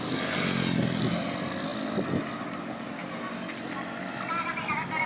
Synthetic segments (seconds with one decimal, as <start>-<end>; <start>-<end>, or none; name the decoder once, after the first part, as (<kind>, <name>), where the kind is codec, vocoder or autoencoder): none